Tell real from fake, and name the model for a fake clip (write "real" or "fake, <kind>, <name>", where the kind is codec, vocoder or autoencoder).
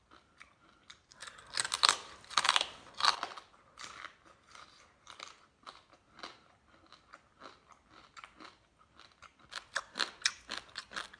real